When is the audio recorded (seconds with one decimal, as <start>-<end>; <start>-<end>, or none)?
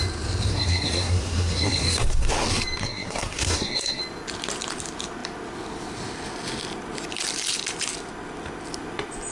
0.0-0.5; 2.3-2.8; 4.0-9.3